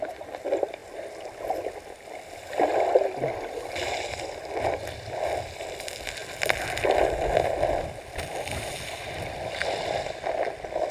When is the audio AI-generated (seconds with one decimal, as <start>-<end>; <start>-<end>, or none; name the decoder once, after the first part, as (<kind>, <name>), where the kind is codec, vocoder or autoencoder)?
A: none

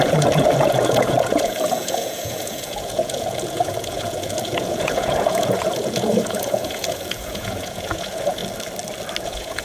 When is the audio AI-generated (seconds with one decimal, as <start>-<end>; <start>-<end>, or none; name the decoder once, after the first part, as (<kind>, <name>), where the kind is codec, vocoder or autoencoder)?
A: 0.0-8.4 (vocoder, Vocos); 9.2-9.6

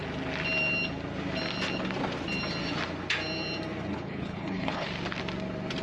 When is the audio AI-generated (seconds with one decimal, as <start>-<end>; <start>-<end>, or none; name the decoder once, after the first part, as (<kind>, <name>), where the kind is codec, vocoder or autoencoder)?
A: 3.9-4.9 (codec, HILCodec)

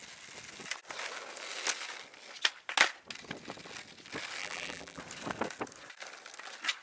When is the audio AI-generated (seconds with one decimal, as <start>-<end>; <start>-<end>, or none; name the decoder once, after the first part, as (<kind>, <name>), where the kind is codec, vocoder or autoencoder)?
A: 4.4-5.0 (vocoder, BigVGAN v2)

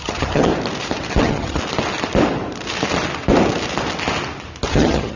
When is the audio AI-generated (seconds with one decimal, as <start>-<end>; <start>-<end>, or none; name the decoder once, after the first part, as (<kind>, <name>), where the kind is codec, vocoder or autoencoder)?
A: 0.0-0.5 (vocoder, HiFi-GAN); 1.2-1.6; 4.7-5.2

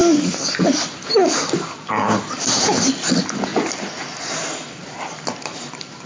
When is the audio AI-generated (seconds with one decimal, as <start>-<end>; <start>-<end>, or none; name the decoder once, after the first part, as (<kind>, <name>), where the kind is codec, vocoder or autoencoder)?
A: none

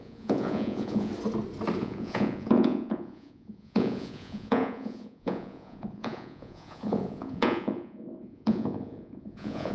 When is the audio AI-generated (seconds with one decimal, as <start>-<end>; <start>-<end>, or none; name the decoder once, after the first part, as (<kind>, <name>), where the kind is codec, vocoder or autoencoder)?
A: 0.0-1.1 (vocoder, Vocos); 1.8-9.7

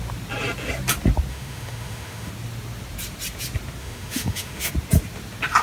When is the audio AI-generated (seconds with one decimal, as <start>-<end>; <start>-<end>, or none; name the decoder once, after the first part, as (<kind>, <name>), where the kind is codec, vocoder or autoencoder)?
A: 1.3-2.3 (autoencoder, DAC-VAE); 3.8-4.7